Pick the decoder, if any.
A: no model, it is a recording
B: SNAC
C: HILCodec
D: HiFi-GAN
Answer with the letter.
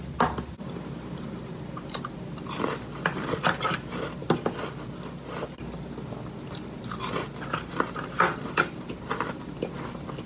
A